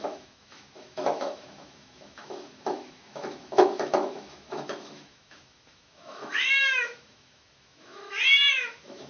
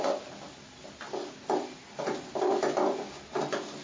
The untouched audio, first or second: second